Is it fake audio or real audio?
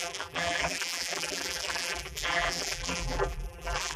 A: fake